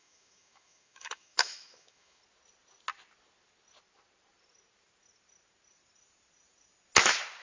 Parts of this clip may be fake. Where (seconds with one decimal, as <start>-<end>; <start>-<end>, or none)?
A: 0.0-2.2